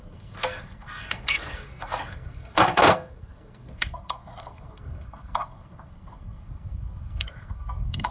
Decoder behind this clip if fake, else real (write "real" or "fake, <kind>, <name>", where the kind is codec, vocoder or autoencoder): fake, codec, SNAC